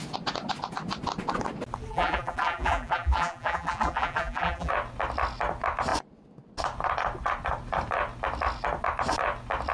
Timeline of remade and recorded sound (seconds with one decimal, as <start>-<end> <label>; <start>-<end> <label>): 0.0-1.9 recorded; 1.9-4.7 remade; 4.7-9.7 recorded